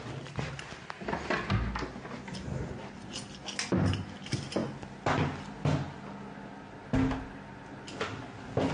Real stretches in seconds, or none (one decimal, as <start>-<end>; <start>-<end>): 0.0-8.7